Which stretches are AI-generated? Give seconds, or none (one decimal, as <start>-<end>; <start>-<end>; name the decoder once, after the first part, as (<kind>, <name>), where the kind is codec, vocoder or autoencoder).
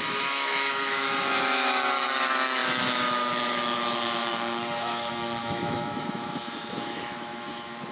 0.0-7.9 (autoencoder, DAC-VAE)